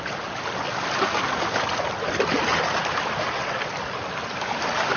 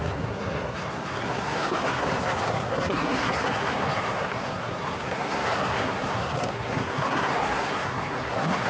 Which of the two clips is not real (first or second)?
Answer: second